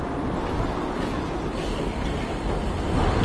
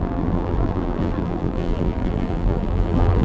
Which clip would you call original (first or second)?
first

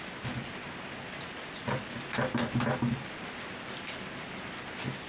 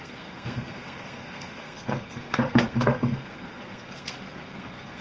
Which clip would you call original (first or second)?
first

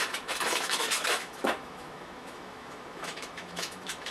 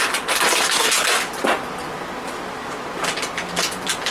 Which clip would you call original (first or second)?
second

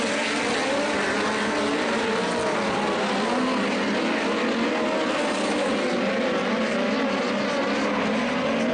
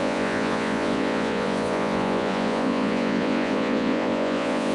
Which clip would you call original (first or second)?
first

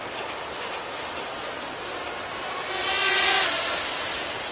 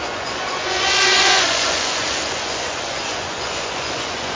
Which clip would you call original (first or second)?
first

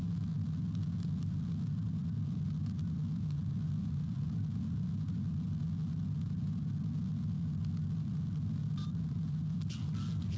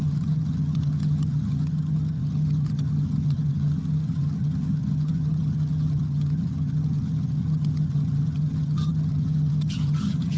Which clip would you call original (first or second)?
first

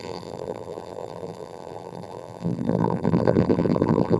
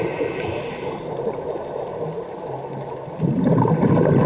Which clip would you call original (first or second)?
second